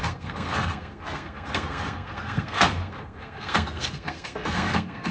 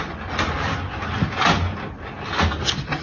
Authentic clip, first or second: second